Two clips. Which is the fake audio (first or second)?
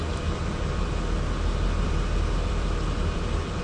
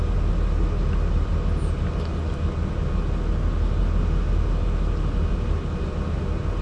first